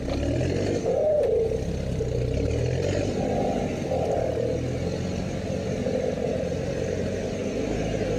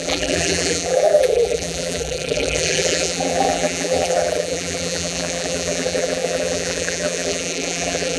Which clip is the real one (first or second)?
first